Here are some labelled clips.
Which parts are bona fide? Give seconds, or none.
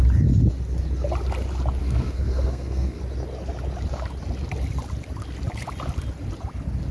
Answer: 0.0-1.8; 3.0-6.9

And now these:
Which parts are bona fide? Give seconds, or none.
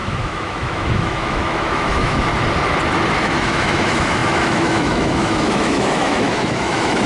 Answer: 2.3-3.2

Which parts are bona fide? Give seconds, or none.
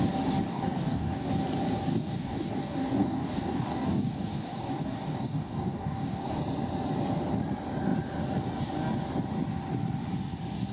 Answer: 0.0-0.5; 1.3-1.9; 6.4-10.7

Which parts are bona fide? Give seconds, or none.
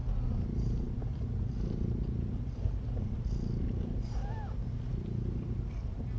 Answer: 0.0-6.2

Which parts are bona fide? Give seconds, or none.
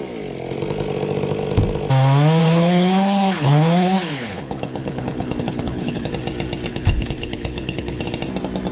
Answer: 0.0-2.4; 6.1-6.7; 8.0-8.7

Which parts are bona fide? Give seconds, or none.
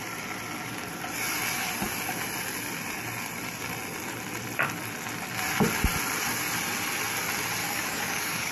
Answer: 0.0-7.6